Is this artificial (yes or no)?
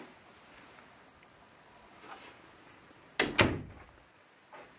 no